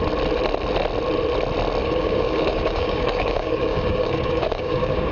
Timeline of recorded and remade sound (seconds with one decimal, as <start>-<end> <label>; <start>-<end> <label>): 0.0-1.8 recorded; 1.8-5.1 remade